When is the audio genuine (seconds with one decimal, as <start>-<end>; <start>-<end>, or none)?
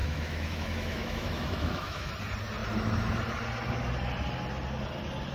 2.1-5.3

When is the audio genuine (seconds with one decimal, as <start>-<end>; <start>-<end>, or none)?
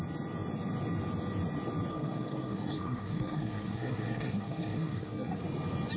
0.0-1.9; 5.4-6.0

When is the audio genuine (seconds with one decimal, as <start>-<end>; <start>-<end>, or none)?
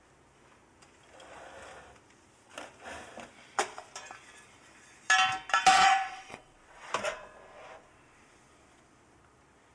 0.0-5.7; 6.9-9.7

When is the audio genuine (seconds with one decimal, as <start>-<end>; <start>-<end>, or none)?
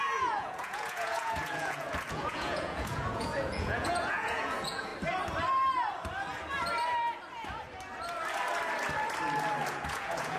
4.9-9.7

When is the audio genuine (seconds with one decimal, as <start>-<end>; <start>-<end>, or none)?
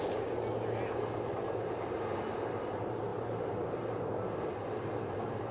0.0-5.5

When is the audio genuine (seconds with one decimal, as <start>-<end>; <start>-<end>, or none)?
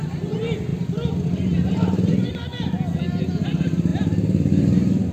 0.0-5.1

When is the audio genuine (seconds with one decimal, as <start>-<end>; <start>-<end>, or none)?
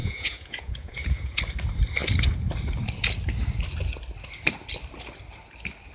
1.4-5.9